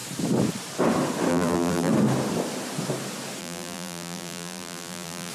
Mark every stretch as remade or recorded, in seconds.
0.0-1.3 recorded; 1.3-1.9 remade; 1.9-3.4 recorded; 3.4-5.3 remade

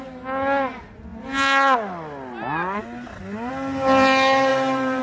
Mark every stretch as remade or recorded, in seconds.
0.0-4.5 recorded; 4.5-5.0 remade

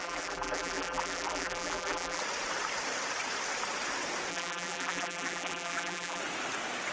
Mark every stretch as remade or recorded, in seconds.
0.0-2.2 remade; 2.2-4.3 recorded; 4.3-6.2 remade; 6.2-6.9 recorded